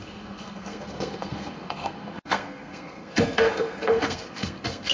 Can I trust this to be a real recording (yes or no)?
no